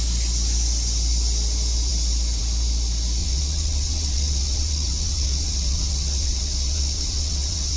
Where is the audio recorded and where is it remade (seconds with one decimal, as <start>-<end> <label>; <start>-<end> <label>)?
0.0-3.2 recorded; 3.2-7.8 remade